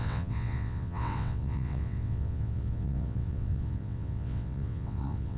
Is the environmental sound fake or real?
fake